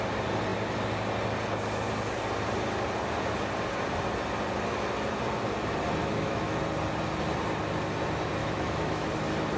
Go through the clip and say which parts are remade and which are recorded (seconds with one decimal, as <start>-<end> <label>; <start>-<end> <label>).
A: 0.0-6.0 recorded; 6.0-6.6 remade; 6.6-8.4 recorded; 8.4-9.1 remade; 9.1-9.6 recorded